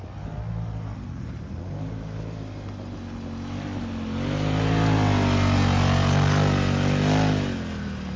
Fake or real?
real